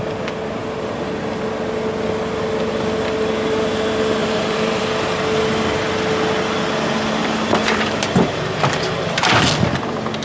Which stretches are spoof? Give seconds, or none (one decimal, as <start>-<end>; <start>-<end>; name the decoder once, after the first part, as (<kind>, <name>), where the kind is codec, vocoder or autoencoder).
4.2-4.8 (vocoder, BigVGAN v2); 7.2-9.0